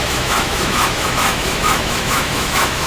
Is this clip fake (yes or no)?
yes